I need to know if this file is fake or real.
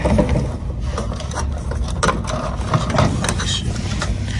real